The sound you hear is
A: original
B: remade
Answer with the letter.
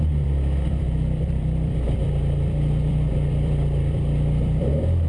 B